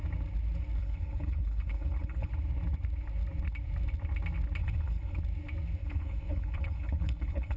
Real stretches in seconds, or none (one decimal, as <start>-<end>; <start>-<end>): 0.0-0.8; 2.3-4.6; 5.2-5.8